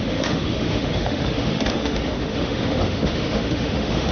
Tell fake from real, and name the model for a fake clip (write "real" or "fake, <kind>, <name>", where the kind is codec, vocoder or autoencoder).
fake, autoencoder, DAC-VAE